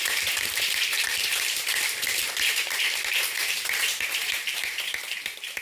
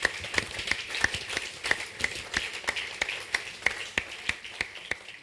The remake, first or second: first